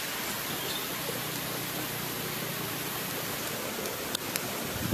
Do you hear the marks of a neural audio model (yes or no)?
no